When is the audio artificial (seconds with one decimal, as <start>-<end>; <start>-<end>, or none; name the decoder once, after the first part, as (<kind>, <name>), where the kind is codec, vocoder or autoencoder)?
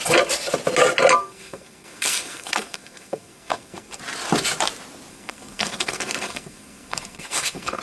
1.2-4.0 (codec, SNAC); 5.1-7.8